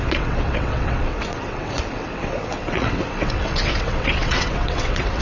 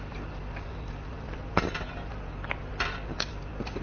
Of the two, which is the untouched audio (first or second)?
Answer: second